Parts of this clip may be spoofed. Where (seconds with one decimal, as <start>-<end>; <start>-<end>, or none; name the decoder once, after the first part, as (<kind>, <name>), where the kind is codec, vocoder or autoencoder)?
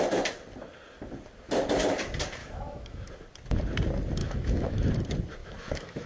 2.4-3.1 (autoencoder, DAC-VAE); 4.2-4.9; 5.4-6.1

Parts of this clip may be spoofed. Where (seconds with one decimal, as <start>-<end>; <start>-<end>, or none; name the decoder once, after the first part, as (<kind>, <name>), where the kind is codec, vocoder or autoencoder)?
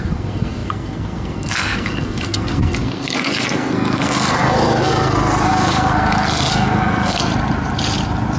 0.0-7.3 (codec, SNAC)